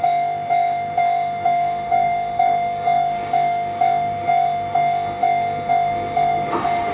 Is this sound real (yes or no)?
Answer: no